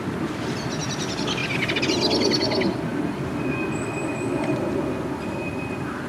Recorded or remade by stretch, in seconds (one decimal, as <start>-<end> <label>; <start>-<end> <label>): 0.0-6.1 recorded